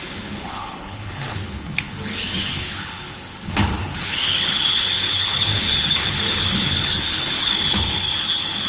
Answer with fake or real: fake